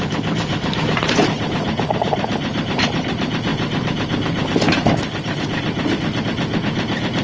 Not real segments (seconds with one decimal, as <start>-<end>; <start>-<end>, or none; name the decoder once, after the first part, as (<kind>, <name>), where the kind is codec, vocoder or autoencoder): 0.0-7.2 (vocoder, BigVGAN v2)